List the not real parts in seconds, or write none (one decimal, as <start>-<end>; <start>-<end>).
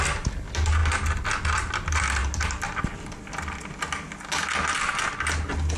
none